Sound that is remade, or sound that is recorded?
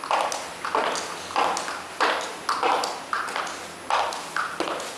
recorded